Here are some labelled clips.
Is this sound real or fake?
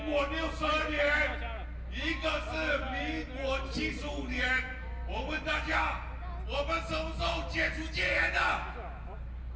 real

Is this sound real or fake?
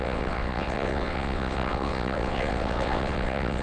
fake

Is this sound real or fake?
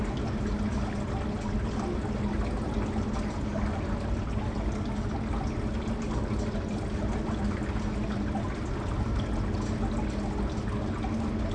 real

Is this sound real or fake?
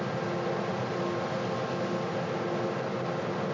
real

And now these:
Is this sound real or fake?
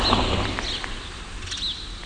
real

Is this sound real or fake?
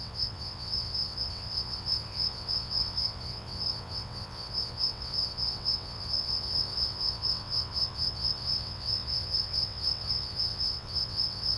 fake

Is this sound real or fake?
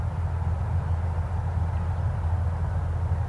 real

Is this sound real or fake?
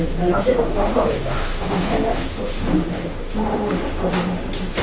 fake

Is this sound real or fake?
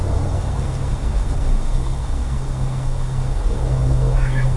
fake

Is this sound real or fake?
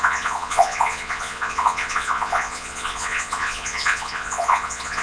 fake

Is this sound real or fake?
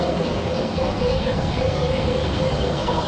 fake